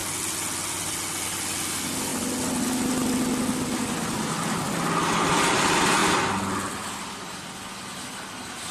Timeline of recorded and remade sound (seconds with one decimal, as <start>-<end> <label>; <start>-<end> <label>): 0.0-8.7 recorded